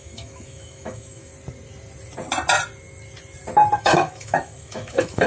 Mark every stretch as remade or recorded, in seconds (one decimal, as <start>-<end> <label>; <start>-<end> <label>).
0.0-1.3 remade; 1.3-3.8 recorded; 3.8-5.3 remade